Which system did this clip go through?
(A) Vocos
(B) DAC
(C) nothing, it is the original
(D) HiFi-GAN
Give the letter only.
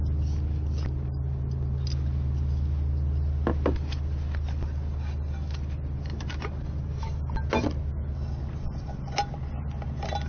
C